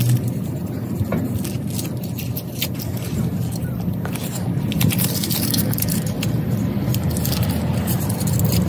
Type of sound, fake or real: real